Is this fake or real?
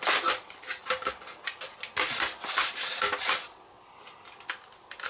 real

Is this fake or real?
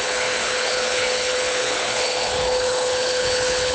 fake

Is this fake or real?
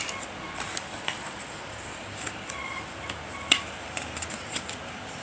real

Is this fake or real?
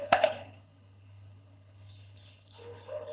fake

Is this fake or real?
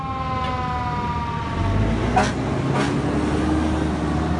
real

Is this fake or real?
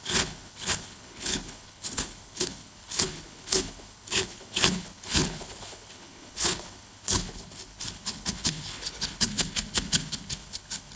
fake